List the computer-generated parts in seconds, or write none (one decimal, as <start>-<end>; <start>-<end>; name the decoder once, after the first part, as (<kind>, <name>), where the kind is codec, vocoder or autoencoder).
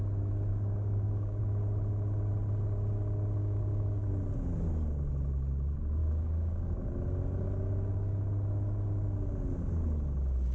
0.5-1.4 (codec, DAC); 3.4-4.1; 6.0-6.8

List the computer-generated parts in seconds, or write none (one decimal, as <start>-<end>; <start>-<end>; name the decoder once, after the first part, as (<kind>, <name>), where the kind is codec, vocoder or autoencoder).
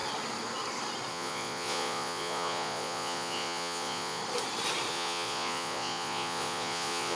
1.1-4.2 (vocoder, Vocos); 4.9-7.2